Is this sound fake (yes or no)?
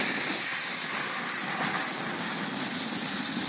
no